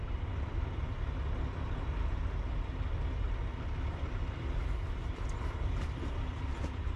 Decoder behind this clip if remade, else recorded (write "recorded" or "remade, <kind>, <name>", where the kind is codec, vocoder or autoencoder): remade, vocoder, BigVGAN v2